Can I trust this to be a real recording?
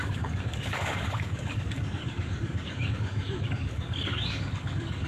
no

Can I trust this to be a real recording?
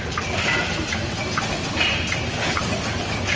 yes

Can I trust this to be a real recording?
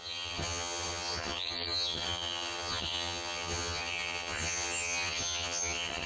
no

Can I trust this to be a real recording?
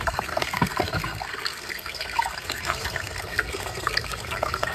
no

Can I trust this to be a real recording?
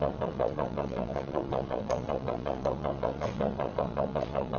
no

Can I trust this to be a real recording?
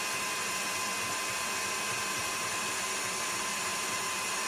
yes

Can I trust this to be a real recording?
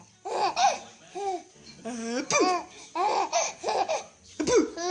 yes